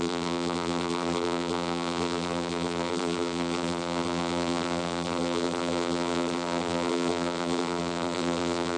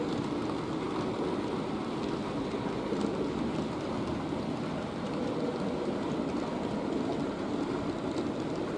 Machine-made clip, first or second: first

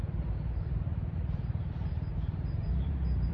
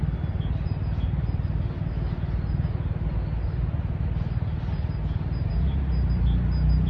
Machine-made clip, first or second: first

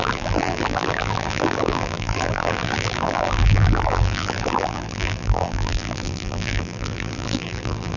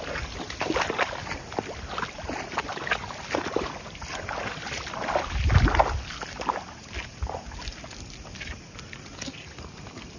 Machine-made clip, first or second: first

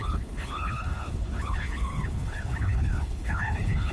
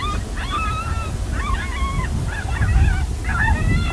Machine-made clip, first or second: first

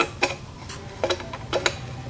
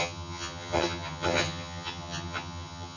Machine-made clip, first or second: second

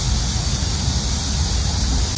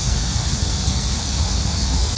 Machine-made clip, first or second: second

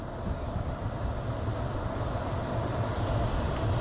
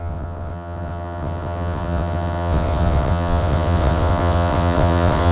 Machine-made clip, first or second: second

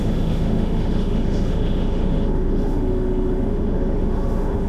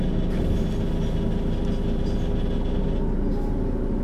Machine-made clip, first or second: first